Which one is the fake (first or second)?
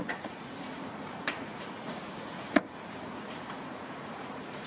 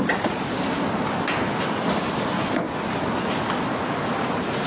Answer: first